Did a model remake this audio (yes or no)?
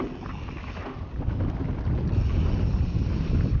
no